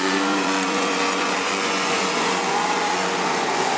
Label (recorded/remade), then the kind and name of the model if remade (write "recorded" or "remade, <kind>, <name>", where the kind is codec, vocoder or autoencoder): remade, vocoder, Vocos